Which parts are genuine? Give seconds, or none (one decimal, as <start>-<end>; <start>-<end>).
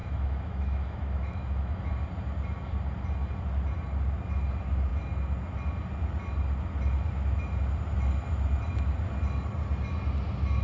1.9-10.6